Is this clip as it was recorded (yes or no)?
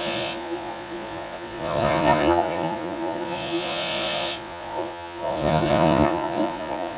no